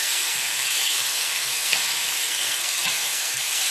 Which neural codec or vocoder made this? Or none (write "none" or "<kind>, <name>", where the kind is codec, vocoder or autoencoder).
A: codec, SNAC